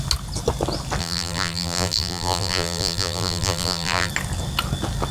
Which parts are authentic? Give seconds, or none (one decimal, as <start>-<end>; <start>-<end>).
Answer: 0.0-1.0; 4.1-5.1